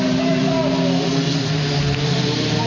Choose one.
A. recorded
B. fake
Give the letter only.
A